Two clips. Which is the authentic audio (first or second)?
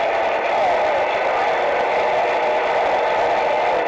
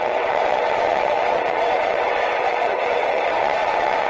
first